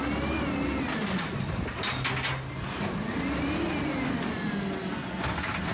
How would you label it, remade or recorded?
recorded